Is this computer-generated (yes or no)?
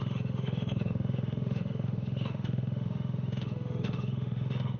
yes